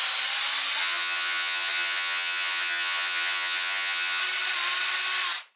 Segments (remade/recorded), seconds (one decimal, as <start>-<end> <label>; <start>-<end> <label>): 0.0-0.8 recorded; 0.8-4.2 remade; 4.2-5.6 recorded